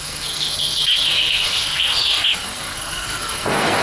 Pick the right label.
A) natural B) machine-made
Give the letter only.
B